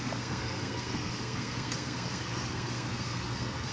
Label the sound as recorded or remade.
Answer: remade